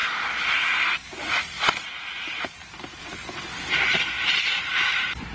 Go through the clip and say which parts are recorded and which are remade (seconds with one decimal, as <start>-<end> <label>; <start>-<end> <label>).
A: 0.0-5.3 recorded